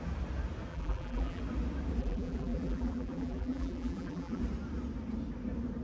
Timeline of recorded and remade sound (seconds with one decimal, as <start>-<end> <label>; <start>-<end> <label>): 0.0-0.7 recorded; 0.7-1.4 remade; 1.4-2.0 recorded; 2.0-4.4 remade; 4.4-5.8 recorded